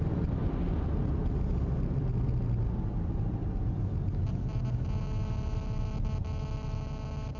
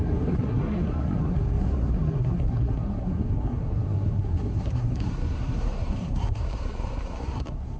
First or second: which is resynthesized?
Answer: second